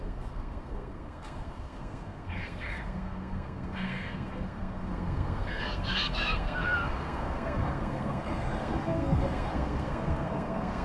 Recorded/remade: remade